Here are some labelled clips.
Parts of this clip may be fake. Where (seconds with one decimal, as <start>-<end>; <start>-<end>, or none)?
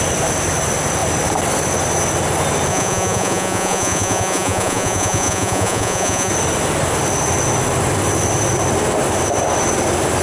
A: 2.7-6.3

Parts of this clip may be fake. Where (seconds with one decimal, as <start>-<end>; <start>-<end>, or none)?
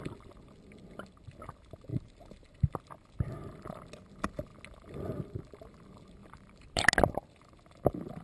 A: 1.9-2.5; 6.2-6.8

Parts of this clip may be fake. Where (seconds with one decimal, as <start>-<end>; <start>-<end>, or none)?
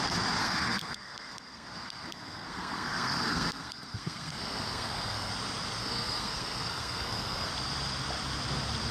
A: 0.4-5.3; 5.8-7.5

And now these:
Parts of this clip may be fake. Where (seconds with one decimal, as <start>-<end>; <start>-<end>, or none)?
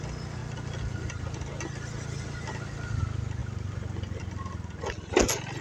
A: none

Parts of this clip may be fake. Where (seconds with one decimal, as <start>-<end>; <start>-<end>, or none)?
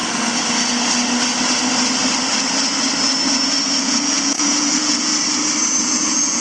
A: 3.8-5.1; 5.8-6.4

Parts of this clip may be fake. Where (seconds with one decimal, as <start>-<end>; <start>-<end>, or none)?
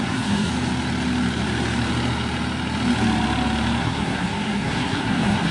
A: 0.0-0.5; 3.8-5.5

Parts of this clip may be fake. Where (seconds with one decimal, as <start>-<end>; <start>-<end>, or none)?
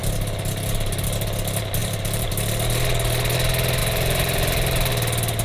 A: 1.8-2.3; 3.8-4.9